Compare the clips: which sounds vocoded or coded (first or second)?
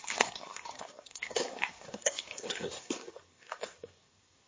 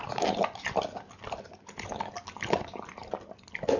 first